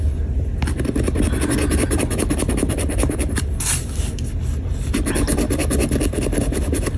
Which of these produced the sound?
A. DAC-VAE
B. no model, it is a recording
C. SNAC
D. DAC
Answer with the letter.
B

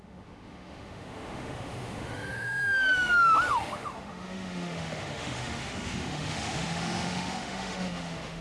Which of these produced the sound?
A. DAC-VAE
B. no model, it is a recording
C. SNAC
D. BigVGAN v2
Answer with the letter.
A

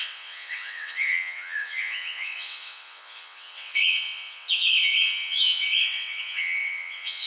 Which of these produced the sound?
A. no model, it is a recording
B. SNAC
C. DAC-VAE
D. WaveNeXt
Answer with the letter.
D